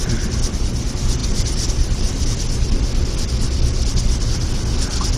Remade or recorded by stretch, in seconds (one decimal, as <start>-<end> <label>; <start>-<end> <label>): 0.0-5.2 recorded